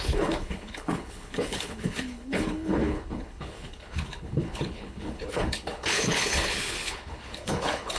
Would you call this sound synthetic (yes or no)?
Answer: yes